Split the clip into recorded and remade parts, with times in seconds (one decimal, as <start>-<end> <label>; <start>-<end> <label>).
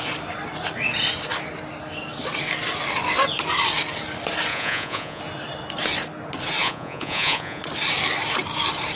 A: 0.0-4.5 recorded; 4.5-5.2 remade; 5.2-6.6 recorded; 6.6-7.6 remade; 7.6-9.0 recorded